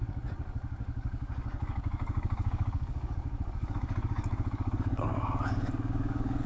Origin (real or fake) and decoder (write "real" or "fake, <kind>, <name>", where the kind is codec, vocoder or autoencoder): fake, codec, DAC